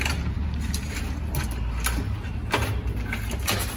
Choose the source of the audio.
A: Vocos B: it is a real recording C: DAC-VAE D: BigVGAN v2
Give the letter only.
B